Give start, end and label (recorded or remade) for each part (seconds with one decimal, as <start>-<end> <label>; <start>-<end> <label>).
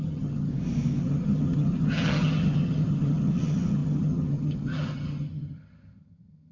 0.0-0.5 remade; 0.5-1.0 recorded; 1.0-6.5 remade